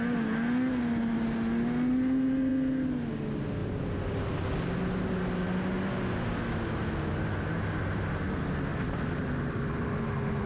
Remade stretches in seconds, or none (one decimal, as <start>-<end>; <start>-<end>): 8.7-10.5